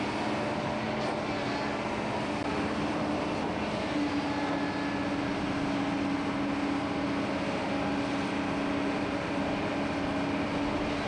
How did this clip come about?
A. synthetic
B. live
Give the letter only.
B